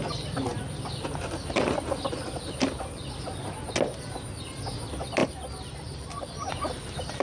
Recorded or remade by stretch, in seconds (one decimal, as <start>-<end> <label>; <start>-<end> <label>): 0.0-7.2 recorded